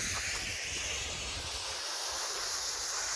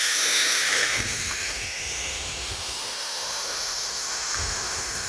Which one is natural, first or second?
first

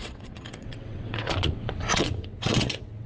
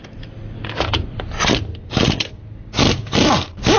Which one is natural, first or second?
second